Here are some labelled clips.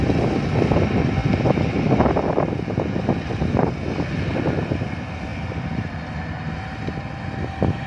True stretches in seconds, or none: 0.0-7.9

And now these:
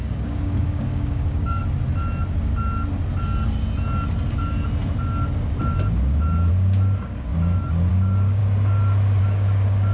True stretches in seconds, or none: 1.6-6.5; 7.3-7.9; 8.4-9.2

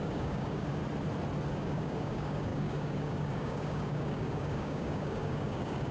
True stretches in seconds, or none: 0.8-1.5

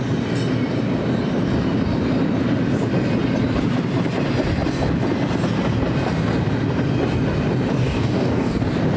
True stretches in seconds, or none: 0.0-7.8; 8.6-9.0